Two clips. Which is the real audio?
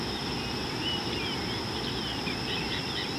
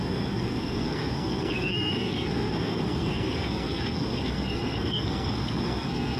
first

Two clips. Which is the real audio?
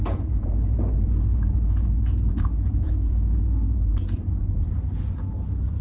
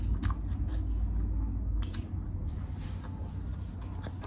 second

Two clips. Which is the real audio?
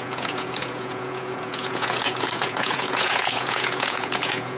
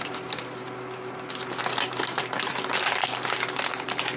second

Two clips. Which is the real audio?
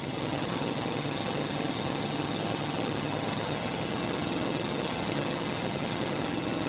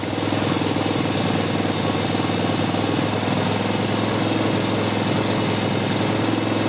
second